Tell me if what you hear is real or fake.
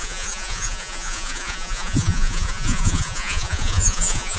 fake